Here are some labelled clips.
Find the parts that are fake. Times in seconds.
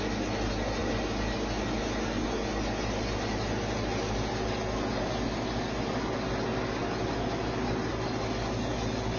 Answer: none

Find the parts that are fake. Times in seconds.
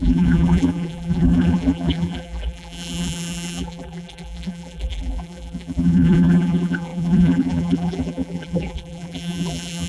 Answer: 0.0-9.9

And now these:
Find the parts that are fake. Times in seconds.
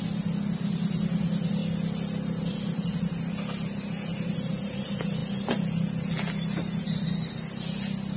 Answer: none